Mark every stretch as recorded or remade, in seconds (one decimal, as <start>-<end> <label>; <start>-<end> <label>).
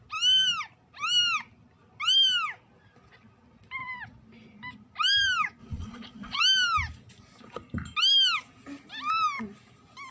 0.0-5.6 recorded; 5.6-6.4 remade; 6.4-10.1 recorded